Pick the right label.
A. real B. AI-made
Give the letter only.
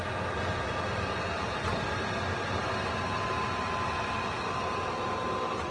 A